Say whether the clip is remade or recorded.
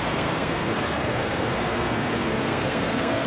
remade